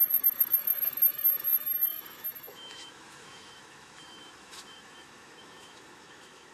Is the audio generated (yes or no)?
yes